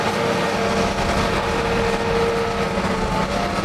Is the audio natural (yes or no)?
yes